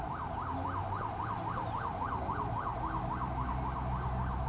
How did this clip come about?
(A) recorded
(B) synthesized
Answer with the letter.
A